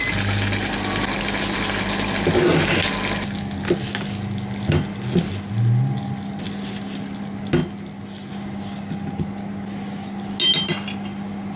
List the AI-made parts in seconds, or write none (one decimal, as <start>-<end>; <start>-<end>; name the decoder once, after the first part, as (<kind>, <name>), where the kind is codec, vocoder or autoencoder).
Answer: none